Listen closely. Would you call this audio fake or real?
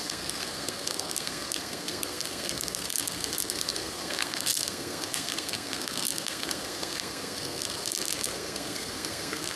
fake